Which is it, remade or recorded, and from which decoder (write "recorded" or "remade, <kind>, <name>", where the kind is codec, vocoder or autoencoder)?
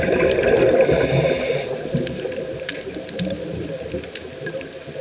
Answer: recorded